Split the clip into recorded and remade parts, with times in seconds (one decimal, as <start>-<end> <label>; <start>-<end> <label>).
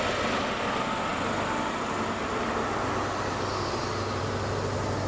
0.0-5.1 recorded